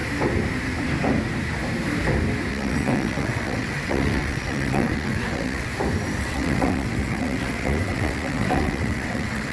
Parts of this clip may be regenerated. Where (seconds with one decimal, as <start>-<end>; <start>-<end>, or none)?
2.5-5.7; 6.2-9.5